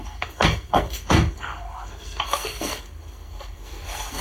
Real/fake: fake